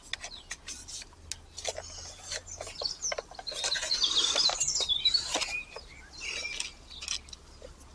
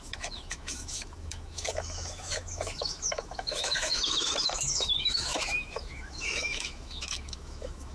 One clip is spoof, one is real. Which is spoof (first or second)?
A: second